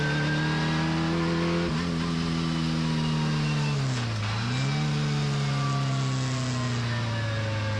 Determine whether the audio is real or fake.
real